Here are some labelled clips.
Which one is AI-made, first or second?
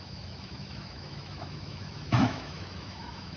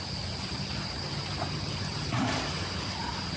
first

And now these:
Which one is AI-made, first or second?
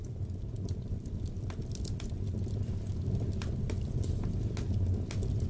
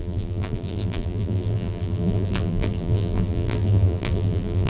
second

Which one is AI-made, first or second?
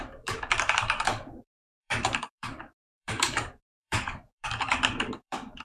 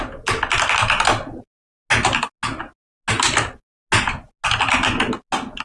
first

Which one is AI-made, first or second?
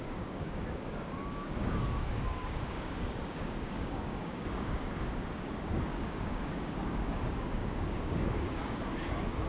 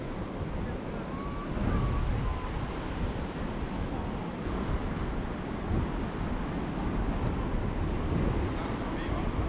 first